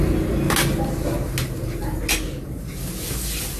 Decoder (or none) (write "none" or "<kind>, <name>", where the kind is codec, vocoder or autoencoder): none